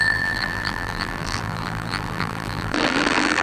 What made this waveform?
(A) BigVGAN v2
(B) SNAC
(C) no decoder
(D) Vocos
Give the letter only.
A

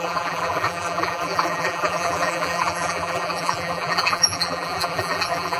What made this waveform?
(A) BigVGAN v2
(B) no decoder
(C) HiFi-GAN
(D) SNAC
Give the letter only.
A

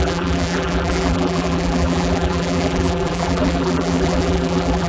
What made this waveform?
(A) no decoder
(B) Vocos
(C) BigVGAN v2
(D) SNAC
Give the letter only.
C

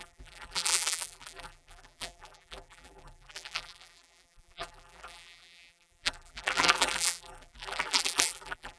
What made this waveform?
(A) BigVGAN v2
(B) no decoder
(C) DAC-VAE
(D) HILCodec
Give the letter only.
A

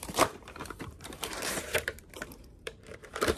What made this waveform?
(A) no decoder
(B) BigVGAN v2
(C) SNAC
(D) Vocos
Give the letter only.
B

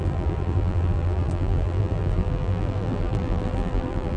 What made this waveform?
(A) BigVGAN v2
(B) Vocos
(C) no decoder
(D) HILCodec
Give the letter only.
A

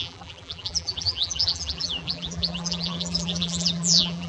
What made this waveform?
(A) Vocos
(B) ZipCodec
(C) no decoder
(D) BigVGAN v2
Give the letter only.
D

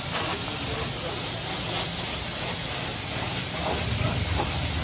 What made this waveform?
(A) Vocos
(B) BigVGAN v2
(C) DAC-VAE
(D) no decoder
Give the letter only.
D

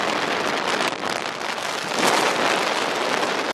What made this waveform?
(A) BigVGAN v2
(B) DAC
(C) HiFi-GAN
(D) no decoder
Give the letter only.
D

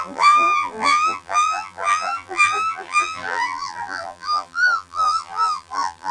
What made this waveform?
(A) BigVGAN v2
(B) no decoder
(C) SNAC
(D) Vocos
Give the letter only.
A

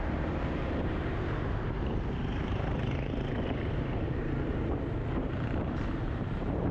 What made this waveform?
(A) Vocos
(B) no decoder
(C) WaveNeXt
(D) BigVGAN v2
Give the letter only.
D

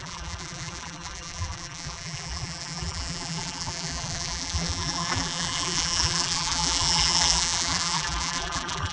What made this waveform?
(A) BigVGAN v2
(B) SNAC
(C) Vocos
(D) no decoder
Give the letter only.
A